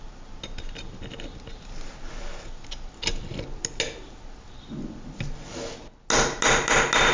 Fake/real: real